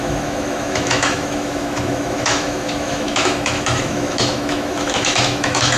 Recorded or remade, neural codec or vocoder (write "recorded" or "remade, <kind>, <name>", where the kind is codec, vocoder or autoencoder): remade, autoencoder, DAC-VAE